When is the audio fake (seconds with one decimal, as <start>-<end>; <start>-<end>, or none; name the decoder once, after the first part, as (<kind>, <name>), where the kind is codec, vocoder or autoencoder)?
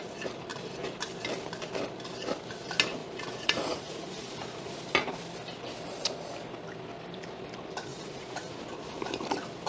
3.0-4.8 (vocoder, Vocos); 7.9-8.6